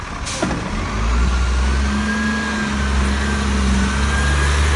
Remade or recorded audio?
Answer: recorded